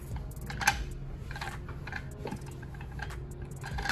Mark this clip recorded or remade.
recorded